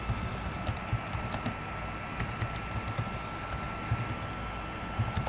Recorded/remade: recorded